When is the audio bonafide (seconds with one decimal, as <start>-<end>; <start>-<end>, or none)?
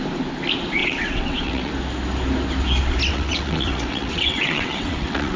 0.0-0.8; 1.7-3.1